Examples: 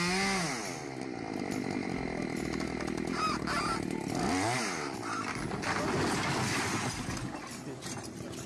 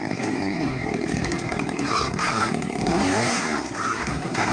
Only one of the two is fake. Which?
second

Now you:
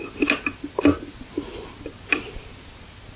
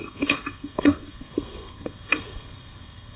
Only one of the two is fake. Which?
second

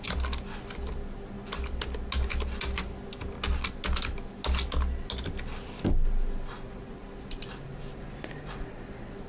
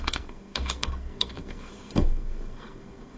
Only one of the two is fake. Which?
second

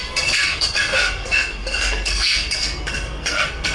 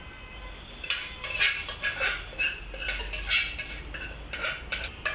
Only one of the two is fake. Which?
first